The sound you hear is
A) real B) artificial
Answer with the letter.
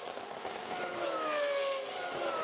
A